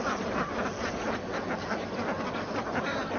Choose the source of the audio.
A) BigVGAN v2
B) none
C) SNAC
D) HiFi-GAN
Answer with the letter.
B